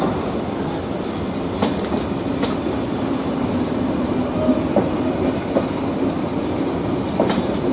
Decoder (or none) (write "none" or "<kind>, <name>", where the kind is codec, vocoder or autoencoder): none